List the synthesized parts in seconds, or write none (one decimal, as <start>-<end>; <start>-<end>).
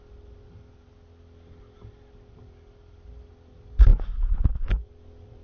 none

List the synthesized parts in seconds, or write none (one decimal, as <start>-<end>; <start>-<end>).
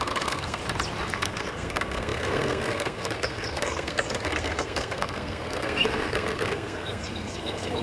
0.0-0.6; 1.1-7.8